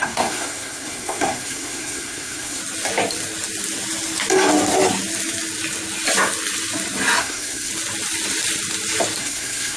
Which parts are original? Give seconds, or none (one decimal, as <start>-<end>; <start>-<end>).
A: 2.6-7.2; 7.7-9.2